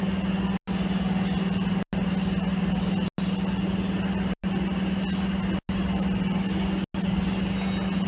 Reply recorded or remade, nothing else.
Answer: recorded